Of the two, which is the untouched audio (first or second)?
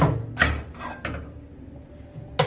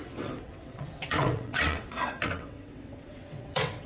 first